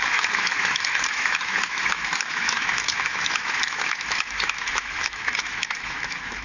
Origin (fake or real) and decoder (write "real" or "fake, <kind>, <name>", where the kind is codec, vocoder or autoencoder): fake, autoencoder, DAC-VAE